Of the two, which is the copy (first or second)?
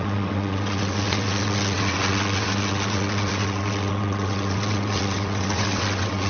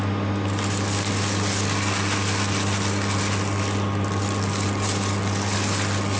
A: first